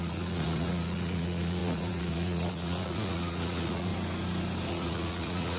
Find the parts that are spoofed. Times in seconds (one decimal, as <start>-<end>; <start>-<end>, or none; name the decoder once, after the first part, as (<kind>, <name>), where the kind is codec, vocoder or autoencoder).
0.0-3.9 (vocoder, Vocos); 4.7-5.6